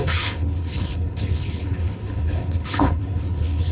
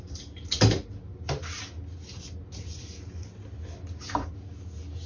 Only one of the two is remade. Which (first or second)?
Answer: first